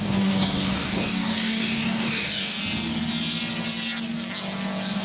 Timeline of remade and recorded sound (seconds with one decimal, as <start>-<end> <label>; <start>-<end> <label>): 0.0-2.6 remade; 2.6-5.0 recorded